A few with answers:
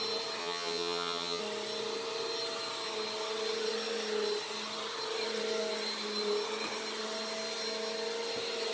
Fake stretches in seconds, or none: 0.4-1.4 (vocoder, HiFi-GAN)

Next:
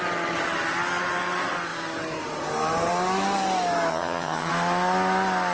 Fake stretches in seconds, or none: 3.9-4.5 (vocoder, HiFi-GAN)

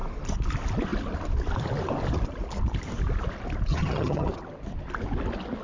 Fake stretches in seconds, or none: 3.7-4.3 (vocoder, HiFi-GAN)

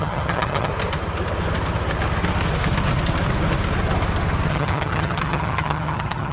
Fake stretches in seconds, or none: 0.0-0.7 (vocoder, HiFi-GAN); 4.5-6.3